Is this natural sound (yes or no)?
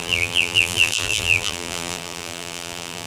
no